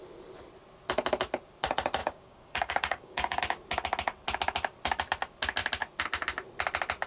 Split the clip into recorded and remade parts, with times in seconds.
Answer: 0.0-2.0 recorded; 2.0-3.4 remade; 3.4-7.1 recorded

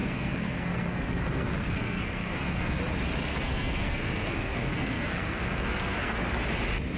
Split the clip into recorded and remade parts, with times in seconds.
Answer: 0.0-2.8 remade; 2.8-3.3 recorded; 3.3-6.2 remade; 6.2-7.0 recorded

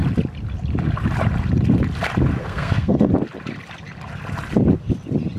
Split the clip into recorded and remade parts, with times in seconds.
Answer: 0.0-2.4 recorded; 2.4-3.1 remade; 3.1-5.4 recorded

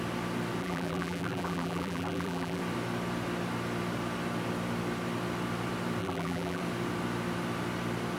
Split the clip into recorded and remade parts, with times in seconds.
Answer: 0.0-0.6 recorded; 0.6-2.6 remade; 2.6-6.0 recorded; 6.0-6.6 remade; 6.6-8.2 recorded